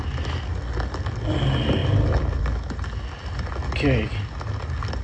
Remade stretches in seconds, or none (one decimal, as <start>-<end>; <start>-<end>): 1.8-2.4